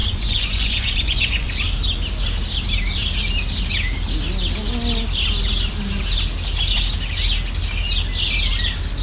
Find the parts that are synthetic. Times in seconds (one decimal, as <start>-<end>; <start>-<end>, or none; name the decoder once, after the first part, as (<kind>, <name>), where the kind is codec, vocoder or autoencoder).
0.0-1.5 (vocoder, Vocos)